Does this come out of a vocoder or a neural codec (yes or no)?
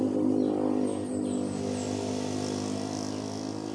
no